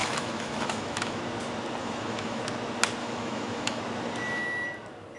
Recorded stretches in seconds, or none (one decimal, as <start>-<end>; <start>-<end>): 1.2-1.8; 2.4-3.0; 3.8-5.2